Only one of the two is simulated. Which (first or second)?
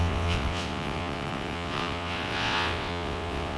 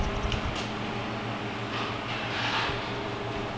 first